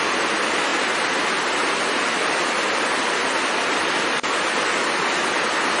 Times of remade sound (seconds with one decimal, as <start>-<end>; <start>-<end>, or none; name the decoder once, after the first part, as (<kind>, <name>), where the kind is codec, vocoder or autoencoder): none